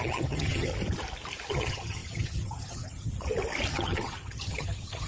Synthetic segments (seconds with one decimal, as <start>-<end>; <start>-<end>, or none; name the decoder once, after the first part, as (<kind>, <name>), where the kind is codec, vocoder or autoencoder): 0.0-0.7 (vocoder, HiFi-GAN); 1.5-3.1; 3.7-5.1